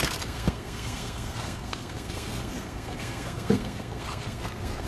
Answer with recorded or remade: remade